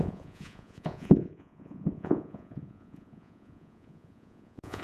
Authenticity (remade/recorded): remade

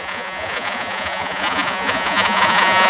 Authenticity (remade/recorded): remade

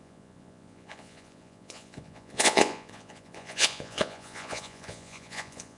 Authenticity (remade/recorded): remade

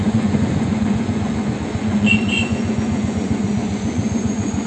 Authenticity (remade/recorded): remade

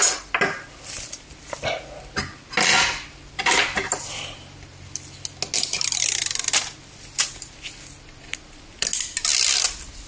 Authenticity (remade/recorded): recorded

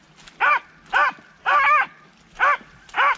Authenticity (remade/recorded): recorded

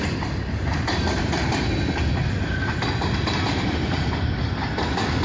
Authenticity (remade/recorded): recorded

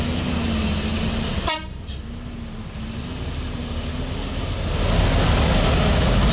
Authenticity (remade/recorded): recorded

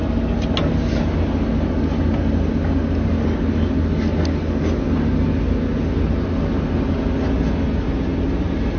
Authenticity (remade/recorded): recorded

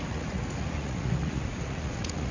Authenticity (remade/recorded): remade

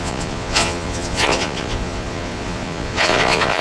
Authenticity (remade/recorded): remade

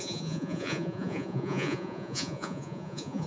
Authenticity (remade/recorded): remade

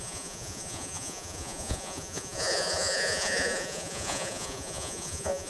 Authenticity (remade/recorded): remade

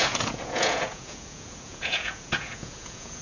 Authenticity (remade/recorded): remade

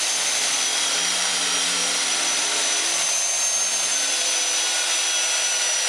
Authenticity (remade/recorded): recorded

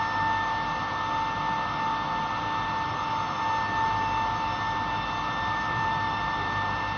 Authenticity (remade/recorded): recorded